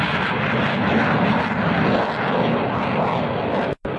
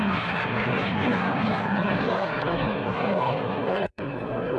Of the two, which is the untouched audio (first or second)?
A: first